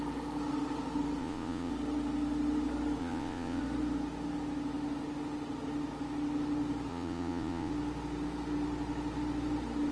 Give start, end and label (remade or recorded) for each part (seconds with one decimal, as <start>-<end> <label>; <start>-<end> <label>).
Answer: 0.0-1.2 recorded; 1.2-1.7 remade; 1.7-3.0 recorded; 3.0-3.6 remade; 3.6-6.9 recorded; 6.9-7.7 remade; 7.7-9.9 recorded